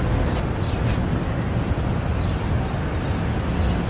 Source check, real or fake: real